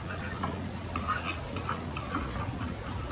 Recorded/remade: remade